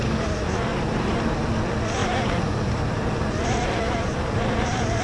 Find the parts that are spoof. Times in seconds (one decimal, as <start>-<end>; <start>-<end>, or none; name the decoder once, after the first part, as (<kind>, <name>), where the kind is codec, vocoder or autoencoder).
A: 0.7-1.5 (vocoder, BigVGAN v2); 2.0-5.0